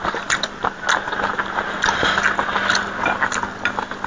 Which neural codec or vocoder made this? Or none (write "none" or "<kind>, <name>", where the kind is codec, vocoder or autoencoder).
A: none